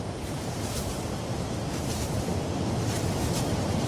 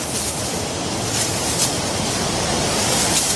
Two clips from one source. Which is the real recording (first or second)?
second